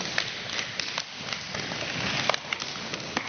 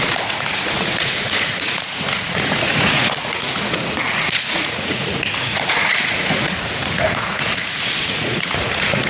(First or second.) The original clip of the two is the first